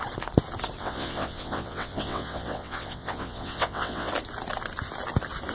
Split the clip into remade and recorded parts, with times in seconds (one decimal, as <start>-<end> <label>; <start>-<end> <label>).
0.0-0.8 recorded; 0.8-4.1 remade; 4.1-5.5 recorded